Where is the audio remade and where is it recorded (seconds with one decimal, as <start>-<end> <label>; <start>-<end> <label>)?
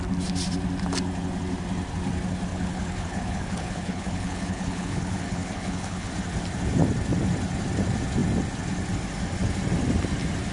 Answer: 0.0-2.5 recorded; 2.5-6.1 remade; 6.1-10.5 recorded